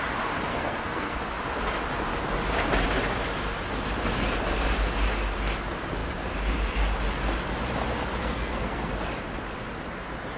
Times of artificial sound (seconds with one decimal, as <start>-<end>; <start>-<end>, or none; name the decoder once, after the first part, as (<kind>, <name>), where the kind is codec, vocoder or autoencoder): 0.5-1.2 (codec, SNAC); 8.2-8.9